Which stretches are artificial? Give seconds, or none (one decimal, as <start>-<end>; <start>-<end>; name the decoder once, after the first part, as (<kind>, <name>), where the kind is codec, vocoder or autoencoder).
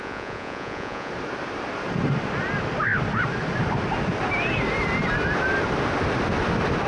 0.0-1.1 (vocoder, Vocos)